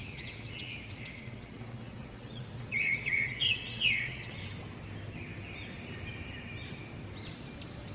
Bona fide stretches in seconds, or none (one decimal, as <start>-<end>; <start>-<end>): 4.4-7.9